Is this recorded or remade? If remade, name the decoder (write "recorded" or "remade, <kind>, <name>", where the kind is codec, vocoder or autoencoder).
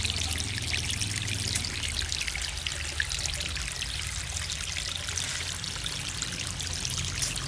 recorded